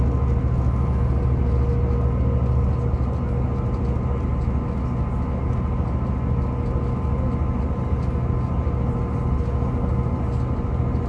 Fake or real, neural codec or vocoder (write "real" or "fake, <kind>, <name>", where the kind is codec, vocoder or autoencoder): real